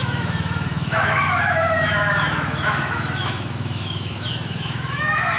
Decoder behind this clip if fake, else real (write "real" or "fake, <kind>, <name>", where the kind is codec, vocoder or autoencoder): fake, autoencoder, DAC-VAE